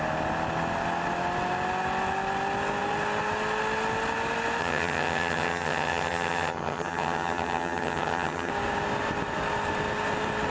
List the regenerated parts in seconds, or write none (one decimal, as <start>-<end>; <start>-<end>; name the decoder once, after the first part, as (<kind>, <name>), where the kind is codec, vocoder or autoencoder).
4.6-8.5 (vocoder, HiFi-GAN)